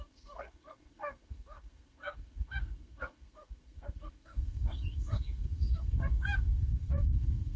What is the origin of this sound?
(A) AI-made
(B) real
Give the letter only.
A